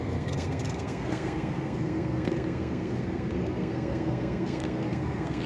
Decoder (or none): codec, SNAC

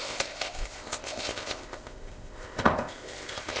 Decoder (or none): codec, ZipCodec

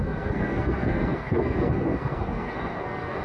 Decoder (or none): codec, SNAC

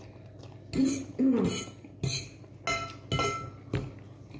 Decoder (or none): none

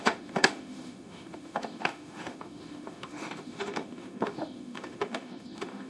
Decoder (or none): autoencoder, DAC-VAE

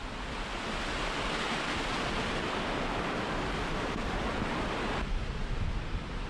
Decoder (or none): none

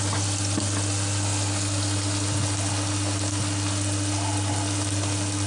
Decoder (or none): none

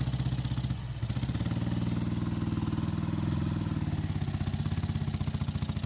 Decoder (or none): none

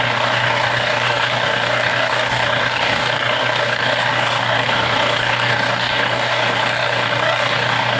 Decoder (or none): codec, DAC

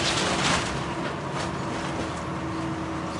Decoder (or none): none